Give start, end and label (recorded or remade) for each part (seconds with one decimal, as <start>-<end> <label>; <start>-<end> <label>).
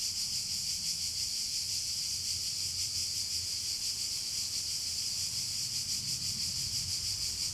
0.0-7.5 recorded